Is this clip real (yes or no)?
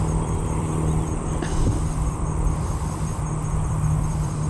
no